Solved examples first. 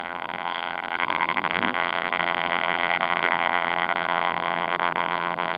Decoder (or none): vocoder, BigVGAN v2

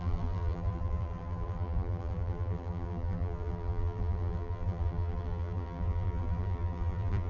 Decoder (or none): vocoder, BigVGAN v2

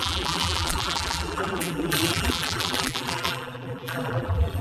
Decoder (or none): vocoder, BigVGAN v2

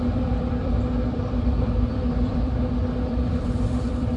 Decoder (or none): vocoder, BigVGAN v2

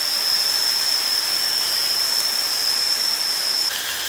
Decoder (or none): none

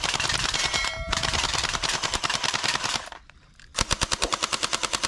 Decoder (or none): vocoder, BigVGAN v2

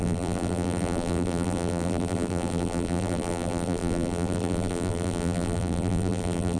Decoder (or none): vocoder, BigVGAN v2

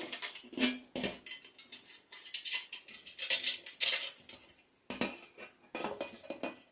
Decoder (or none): none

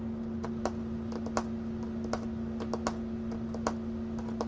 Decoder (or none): none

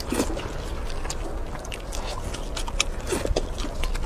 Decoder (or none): none